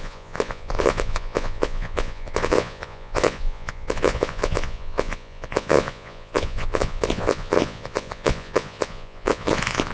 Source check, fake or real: fake